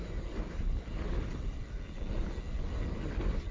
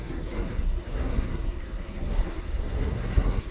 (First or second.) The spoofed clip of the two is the second